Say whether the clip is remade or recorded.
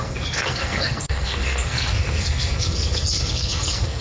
remade